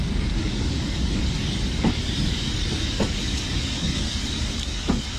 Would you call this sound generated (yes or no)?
yes